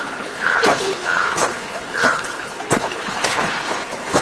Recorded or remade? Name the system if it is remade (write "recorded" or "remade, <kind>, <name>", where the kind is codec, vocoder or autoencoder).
remade, codec, HILCodec